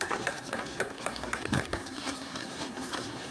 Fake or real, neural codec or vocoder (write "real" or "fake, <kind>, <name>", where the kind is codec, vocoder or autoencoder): fake, codec, SNAC